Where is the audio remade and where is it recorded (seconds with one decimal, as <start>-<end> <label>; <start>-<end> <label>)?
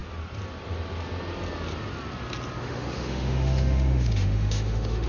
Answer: 0.0-2.6 recorded; 2.6-5.1 remade